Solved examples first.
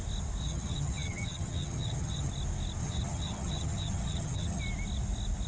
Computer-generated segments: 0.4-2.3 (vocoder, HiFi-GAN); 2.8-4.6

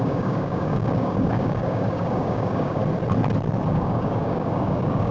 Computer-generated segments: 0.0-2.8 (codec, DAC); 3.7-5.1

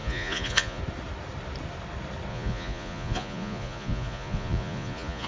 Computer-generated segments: 0.0-0.8 (vocoder, Vocos); 2.3-5.3

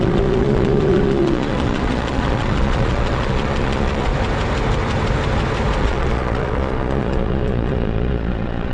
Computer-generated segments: 0.0-4.1 (vocoder, Vocos); 5.8-8.7